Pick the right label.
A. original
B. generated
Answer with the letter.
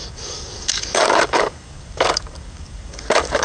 B